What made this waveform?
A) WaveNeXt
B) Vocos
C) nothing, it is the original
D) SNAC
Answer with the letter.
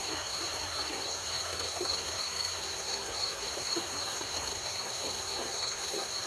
D